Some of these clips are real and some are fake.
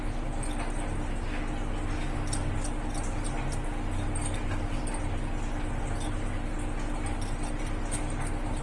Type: real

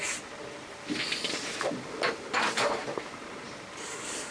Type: real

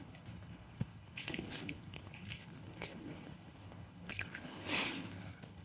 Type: fake